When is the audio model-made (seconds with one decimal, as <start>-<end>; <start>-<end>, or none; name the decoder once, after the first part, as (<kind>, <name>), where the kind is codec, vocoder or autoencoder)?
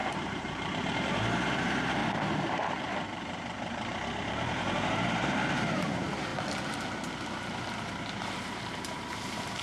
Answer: 0.0-2.0 (vocoder, BigVGAN v2); 2.5-6.3; 7.8-9.6